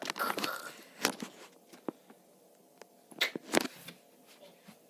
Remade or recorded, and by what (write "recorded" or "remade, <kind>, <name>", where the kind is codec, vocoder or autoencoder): recorded